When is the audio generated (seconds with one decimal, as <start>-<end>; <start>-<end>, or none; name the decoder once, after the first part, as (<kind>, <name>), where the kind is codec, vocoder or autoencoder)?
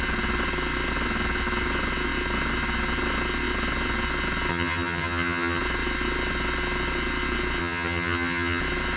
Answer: 4.5-5.6 (vocoder, HiFi-GAN); 7.6-8.6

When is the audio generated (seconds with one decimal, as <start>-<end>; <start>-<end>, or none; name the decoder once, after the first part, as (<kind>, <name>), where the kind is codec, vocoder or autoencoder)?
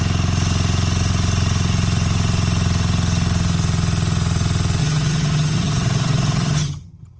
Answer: 4.8-7.2 (vocoder, HiFi-GAN)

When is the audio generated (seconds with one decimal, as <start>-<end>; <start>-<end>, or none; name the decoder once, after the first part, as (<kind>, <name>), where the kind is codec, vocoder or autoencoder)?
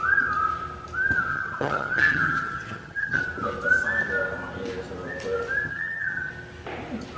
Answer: 1.3-3.2 (vocoder, HiFi-GAN); 5.7-6.3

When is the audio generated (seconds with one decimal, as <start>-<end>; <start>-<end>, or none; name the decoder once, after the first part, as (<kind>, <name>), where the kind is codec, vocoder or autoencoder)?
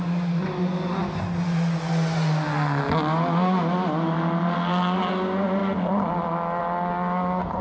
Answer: none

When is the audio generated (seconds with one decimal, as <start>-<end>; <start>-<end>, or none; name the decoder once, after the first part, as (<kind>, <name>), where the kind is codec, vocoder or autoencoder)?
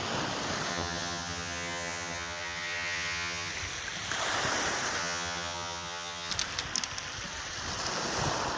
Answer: 0.7-3.5 (vocoder, HiFi-GAN); 5.0-6.3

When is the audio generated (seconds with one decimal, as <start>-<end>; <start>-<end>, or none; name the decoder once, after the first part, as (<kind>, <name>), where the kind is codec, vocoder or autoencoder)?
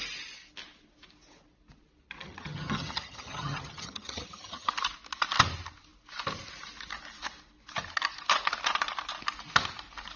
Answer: 2.2-4.7 (vocoder, HiFi-GAN)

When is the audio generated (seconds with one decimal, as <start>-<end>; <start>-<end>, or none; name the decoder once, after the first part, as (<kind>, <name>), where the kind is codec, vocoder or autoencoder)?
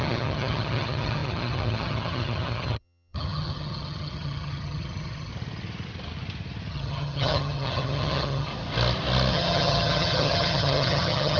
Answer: 0.0-5.3 (vocoder, HiFi-GAN); 6.7-8.5; 9.3-11.4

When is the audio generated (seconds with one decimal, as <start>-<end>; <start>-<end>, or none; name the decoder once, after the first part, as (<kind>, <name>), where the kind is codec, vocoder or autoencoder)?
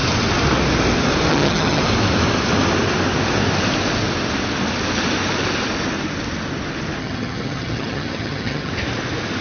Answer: 1.3-1.8 (vocoder, HiFi-GAN); 7.0-8.7